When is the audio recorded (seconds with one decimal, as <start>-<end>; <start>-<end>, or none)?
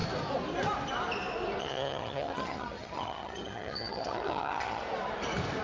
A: 0.0-1.6; 4.8-5.6